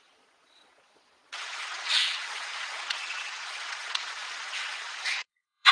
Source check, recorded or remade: remade